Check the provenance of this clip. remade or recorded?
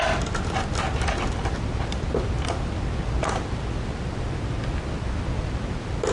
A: recorded